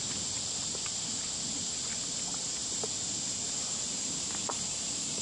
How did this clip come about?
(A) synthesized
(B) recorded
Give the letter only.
B